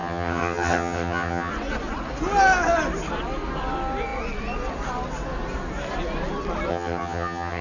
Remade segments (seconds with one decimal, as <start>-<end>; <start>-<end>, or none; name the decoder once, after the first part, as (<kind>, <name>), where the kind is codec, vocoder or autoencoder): 0.0-1.5 (vocoder, HiFi-GAN); 6.7-7.6